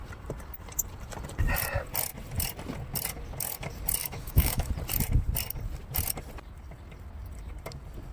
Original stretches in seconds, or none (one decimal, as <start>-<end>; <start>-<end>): 0.0-4.0; 4.7-8.1